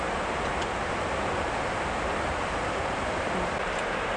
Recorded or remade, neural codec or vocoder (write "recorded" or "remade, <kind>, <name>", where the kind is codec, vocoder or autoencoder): recorded